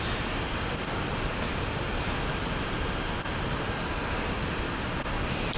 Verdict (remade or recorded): remade